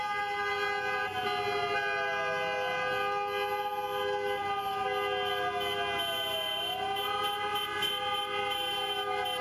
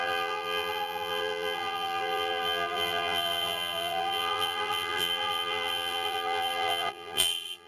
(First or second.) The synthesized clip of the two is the second